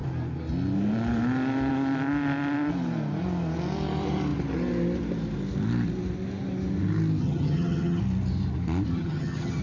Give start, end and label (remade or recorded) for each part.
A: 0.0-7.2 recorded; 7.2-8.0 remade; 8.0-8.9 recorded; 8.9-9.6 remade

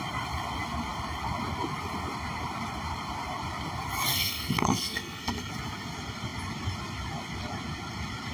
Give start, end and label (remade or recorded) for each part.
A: 0.0-4.1 recorded; 4.1-5.5 remade; 5.5-8.3 recorded

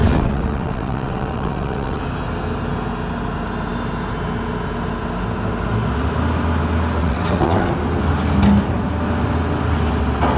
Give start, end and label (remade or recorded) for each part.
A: 0.0-2.0 remade; 2.0-7.0 recorded; 7.0-7.7 remade; 7.7-10.4 recorded

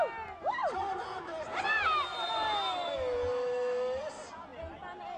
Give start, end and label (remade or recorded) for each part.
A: 0.0-3.3 recorded; 3.3-4.0 remade; 4.0-5.2 recorded

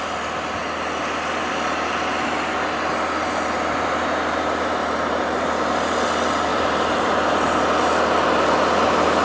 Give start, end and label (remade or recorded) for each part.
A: 0.0-4.8 recorded; 4.8-5.5 remade; 5.5-6.5 recorded; 6.5-7.1 remade; 7.1-9.2 recorded

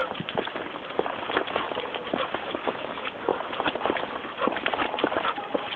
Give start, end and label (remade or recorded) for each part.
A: 0.0-2.5 recorded; 2.5-3.3 remade; 3.3-5.8 recorded